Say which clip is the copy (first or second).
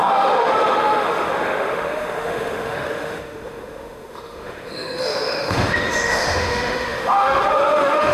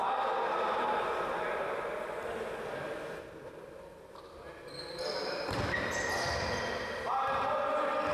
first